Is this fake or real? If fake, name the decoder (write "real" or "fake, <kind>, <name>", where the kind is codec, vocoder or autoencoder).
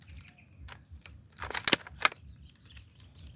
real